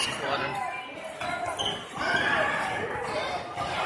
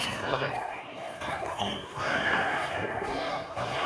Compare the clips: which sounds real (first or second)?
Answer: first